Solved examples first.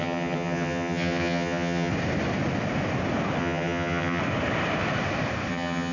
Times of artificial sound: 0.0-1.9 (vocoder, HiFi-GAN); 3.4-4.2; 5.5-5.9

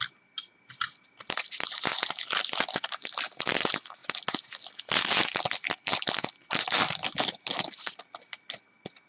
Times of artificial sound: none